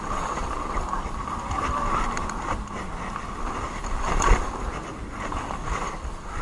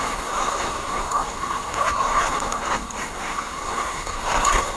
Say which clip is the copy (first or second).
second